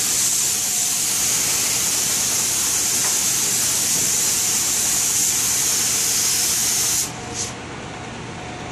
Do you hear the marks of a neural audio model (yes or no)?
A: no